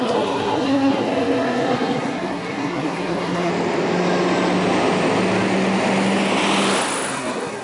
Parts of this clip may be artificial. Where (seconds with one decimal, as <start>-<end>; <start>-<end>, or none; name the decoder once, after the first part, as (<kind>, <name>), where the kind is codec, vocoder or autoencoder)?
0.0-3.5 (codec, SNAC); 7.1-7.6